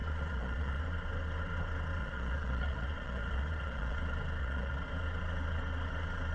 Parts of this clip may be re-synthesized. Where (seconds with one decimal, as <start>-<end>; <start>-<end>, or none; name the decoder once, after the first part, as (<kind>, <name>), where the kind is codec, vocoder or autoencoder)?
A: 0.0-0.8 (vocoder, Vocos); 2.0-4.0; 4.4-4.9